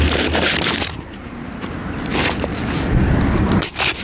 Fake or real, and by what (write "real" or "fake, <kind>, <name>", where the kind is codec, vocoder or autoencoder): fake, vocoder, BigVGAN v2